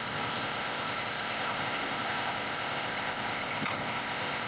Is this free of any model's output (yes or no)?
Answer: no